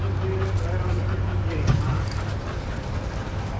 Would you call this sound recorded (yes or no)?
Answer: yes